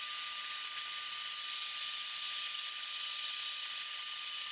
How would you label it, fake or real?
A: real